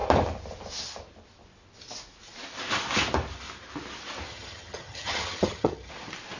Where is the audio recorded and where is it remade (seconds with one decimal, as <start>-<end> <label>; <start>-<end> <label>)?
0.0-4.3 recorded; 4.3-5.9 remade; 5.9-6.4 recorded